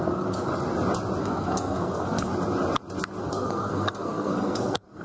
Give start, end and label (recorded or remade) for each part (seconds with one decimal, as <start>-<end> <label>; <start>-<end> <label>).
0.0-0.5 remade; 0.5-1.2 recorded; 1.2-2.3 remade; 2.3-3.2 recorded; 3.2-5.0 remade